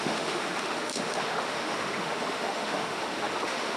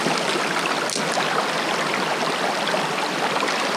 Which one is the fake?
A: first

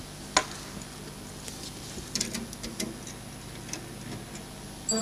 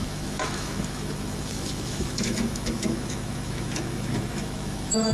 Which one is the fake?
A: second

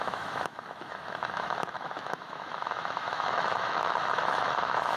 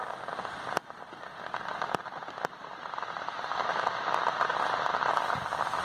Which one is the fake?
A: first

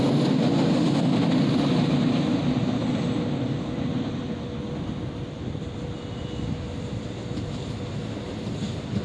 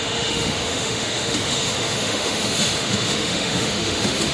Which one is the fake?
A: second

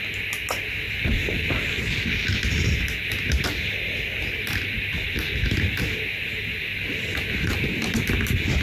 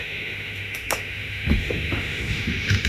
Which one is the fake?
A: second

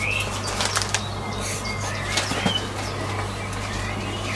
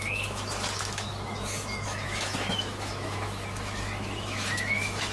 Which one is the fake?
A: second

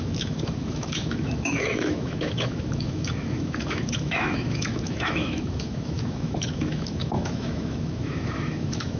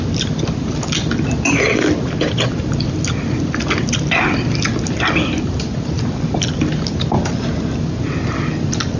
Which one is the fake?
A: first